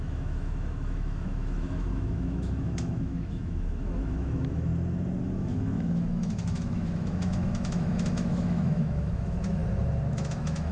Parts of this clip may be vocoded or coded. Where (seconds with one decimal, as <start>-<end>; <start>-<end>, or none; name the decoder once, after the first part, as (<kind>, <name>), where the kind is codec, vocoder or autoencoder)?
0.0-4.7 (autoencoder, DAC-VAE); 5.2-9.6; 10.1-10.7